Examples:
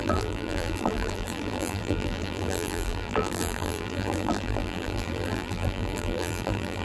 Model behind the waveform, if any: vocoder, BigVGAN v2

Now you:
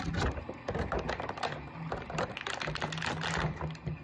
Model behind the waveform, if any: none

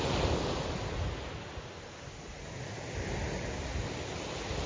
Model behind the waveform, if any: none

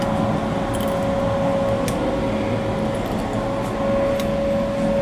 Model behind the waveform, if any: none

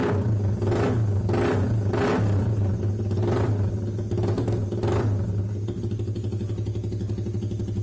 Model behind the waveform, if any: none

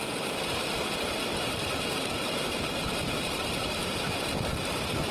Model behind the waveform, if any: vocoder, BigVGAN v2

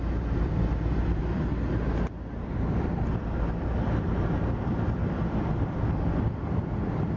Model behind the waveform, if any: vocoder, BigVGAN v2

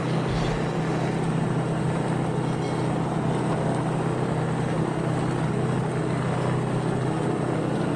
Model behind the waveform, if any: none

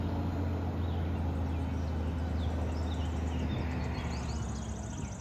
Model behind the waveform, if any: none